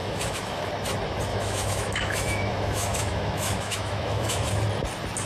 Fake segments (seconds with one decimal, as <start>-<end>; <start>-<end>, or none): 0.0-0.7; 1.3-4.5